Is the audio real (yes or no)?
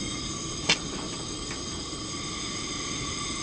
yes